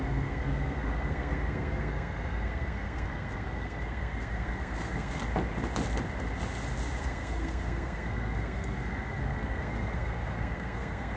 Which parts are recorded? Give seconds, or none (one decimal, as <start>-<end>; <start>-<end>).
5.2-7.0